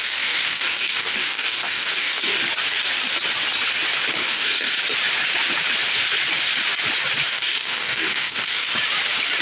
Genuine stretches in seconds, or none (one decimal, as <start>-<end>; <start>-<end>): 2.4-4.1; 4.7-7.3; 8.7-9.4